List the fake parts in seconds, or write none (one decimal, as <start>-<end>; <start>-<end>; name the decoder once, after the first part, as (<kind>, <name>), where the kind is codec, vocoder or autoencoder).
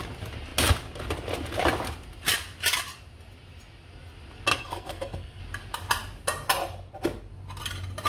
4.5-5.4 (codec, SNAC)